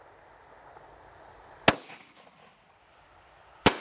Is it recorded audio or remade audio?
recorded